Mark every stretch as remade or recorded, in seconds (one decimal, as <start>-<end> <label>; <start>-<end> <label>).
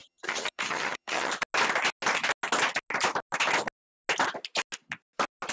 0.0-1.3 remade; 1.3-5.5 recorded